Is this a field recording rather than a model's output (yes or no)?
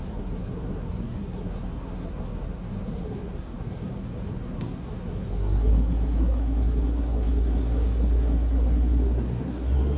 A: no